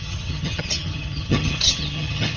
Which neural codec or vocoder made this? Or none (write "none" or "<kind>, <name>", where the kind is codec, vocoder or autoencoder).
vocoder, HiFi-GAN